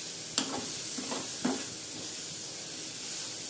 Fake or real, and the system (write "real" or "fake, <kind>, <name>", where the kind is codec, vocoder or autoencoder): real